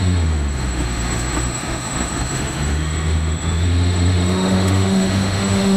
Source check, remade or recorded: remade